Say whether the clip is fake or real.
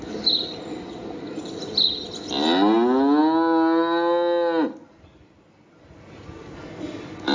real